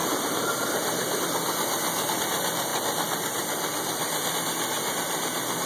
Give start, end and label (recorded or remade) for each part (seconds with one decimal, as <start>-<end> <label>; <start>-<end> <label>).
0.0-1.2 remade; 1.2-5.7 recorded